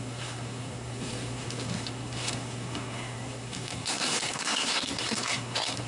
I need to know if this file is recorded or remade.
remade